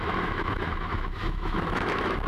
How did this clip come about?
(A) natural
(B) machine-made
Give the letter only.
B